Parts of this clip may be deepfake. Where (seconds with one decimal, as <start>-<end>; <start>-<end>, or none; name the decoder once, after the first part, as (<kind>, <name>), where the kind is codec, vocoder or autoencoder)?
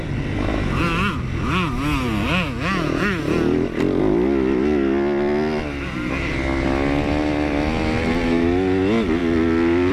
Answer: none